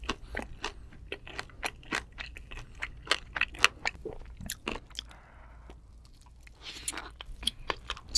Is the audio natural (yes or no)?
yes